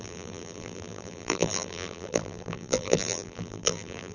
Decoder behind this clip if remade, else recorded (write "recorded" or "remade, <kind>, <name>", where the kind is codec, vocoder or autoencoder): remade, vocoder, BigVGAN v2